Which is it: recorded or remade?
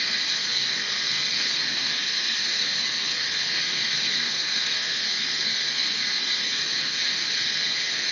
remade